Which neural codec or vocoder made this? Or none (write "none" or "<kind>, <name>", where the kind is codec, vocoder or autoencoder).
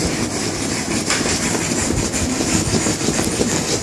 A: none